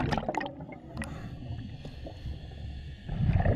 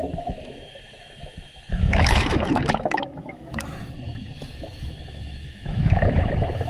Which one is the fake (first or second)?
second